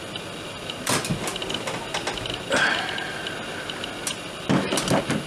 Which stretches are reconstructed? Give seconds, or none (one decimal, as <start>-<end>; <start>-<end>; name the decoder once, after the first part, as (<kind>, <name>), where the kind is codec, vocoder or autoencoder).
none